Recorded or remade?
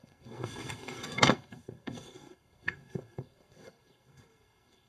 remade